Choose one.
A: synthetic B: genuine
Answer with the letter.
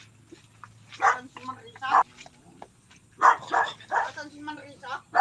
B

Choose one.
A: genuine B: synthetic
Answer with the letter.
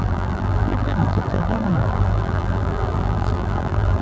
B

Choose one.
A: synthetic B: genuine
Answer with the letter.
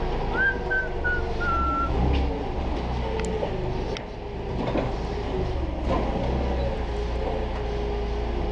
B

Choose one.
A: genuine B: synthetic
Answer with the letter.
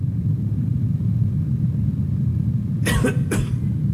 A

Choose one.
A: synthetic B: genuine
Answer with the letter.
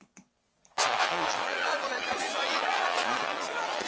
A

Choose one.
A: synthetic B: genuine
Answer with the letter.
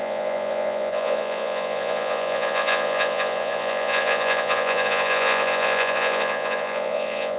A